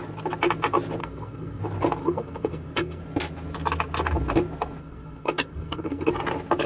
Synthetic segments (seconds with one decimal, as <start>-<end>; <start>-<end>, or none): 1.0-1.6; 2.0-3.0; 4.8-6.1